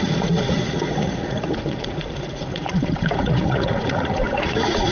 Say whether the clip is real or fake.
fake